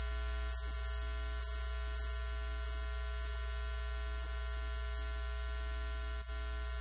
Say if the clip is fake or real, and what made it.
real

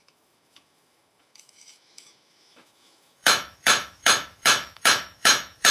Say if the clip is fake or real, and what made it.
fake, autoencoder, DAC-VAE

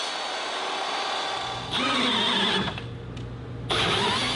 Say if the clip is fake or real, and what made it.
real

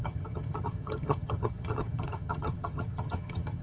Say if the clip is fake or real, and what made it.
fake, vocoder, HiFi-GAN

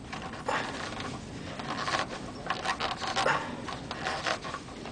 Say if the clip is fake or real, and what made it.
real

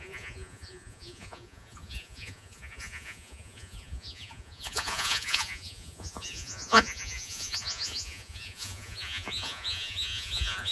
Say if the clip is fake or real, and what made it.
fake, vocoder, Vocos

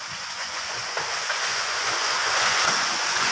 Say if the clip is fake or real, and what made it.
fake, vocoder, Vocos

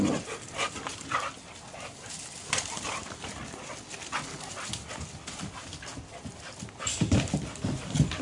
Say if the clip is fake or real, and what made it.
real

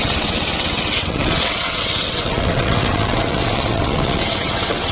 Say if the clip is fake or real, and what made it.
fake, vocoder, WaveNeXt